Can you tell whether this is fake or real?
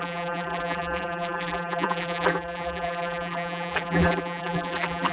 fake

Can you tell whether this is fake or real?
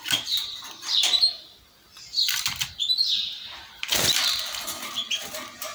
real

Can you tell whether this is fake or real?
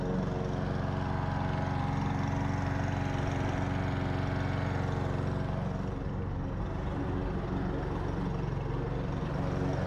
real